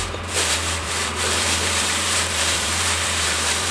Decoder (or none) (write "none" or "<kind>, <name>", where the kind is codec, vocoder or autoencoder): vocoder, BigVGAN v2